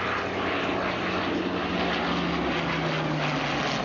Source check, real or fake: real